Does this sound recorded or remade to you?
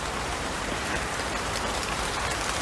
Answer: remade